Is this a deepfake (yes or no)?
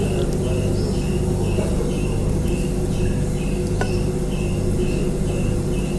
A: no